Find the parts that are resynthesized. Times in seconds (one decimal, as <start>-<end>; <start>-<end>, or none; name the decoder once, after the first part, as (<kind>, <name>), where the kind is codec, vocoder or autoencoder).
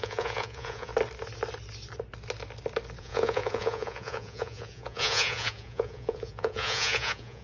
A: 0.0-0.9 (vocoder, Vocos); 3.0-7.4